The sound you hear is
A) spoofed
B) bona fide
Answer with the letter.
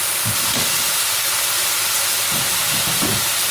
B